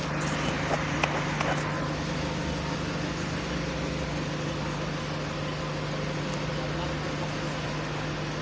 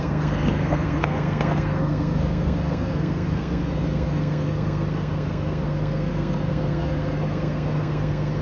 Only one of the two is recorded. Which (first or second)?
first